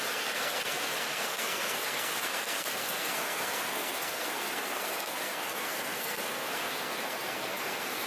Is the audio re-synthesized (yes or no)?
yes